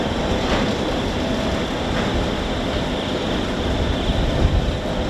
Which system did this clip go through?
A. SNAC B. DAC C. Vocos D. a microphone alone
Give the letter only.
D